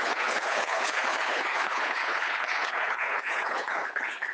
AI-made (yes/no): yes